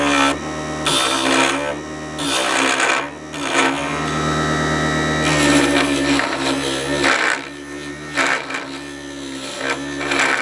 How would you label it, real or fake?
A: real